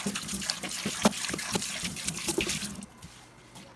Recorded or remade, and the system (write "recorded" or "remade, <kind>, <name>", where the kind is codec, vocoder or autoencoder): recorded